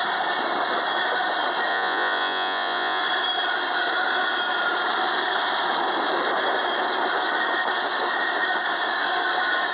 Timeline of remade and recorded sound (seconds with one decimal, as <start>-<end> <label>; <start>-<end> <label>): 0.0-1.7 recorded; 1.7-3.0 remade; 3.0-9.7 recorded